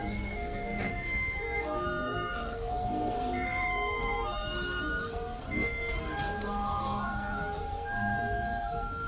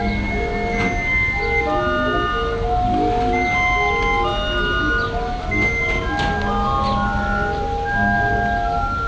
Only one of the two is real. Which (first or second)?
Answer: second